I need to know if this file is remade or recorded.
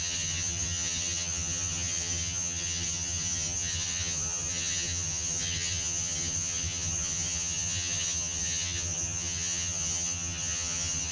remade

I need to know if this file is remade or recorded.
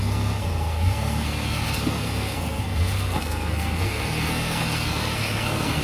remade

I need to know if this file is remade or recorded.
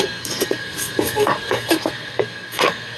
remade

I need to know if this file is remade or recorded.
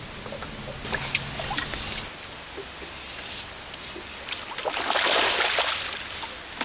recorded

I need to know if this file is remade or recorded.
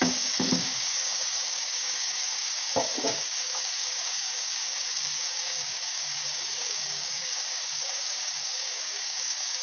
remade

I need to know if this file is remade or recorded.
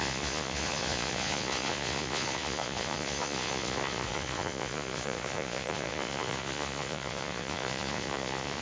remade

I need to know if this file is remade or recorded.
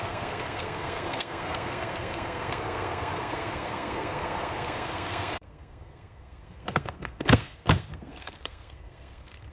remade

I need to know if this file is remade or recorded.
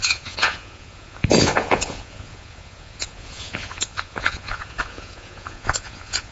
remade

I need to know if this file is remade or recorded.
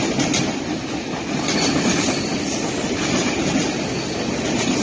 recorded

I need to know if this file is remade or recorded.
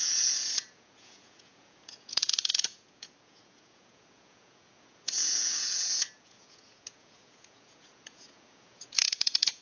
remade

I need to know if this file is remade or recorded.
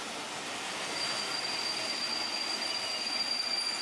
recorded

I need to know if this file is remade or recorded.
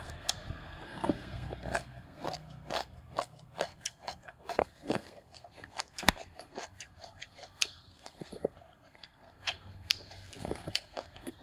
remade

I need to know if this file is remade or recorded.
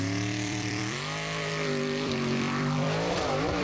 remade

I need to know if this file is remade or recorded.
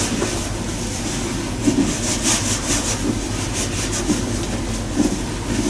recorded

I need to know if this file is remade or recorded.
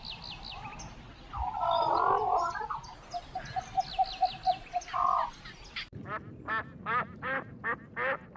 recorded